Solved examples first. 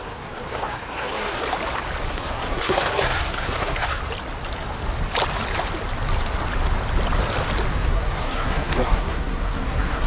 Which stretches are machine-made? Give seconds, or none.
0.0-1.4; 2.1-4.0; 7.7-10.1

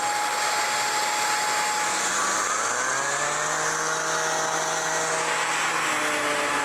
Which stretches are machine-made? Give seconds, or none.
none

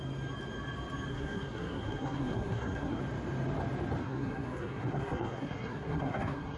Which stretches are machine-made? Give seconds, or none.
1.1-3.0; 4.0-6.6

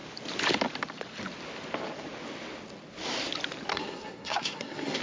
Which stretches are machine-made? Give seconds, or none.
3.7-5.0